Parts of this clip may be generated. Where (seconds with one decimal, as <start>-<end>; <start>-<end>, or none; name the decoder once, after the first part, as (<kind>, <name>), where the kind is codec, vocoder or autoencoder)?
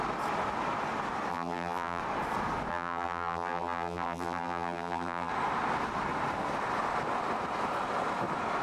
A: 1.3-2.0 (vocoder, BigVGAN v2); 2.7-5.3